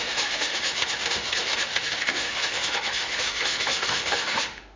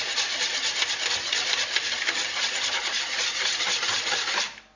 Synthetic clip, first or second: first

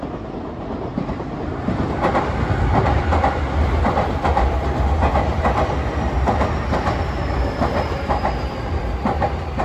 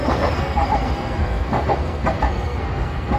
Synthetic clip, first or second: second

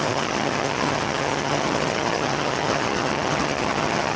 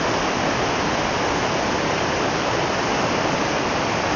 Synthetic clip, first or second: first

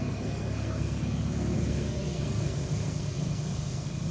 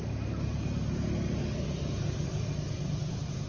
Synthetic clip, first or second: first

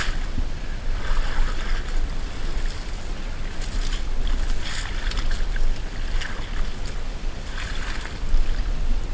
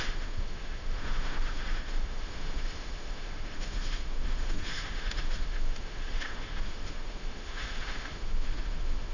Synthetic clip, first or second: second